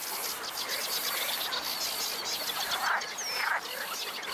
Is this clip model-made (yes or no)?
no